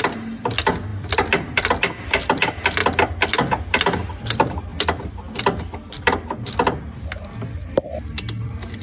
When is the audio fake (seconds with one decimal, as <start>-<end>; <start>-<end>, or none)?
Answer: none